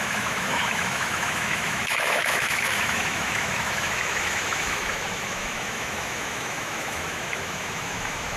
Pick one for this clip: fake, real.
fake